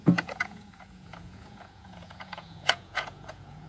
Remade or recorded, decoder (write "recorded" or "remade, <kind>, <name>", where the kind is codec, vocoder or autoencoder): remade, vocoder, Vocos